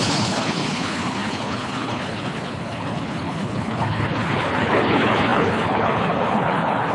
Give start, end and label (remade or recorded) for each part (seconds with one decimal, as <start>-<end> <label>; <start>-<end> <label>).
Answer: 0.0-6.9 remade